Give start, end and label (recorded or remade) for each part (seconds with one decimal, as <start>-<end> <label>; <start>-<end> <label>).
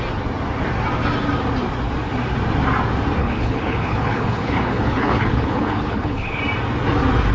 0.0-3.2 recorded; 3.2-6.4 remade; 6.4-7.3 recorded